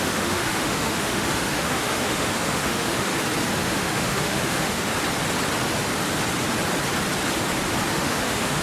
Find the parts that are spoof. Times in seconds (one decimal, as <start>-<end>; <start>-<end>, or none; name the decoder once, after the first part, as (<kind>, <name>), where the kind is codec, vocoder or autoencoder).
0.0-3.1 (autoencoder, DAC-VAE); 3.6-4.9; 7.9-8.6